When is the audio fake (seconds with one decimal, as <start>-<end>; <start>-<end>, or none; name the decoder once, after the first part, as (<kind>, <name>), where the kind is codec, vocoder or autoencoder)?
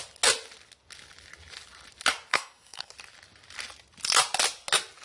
2.3-2.9 (codec, SNAC)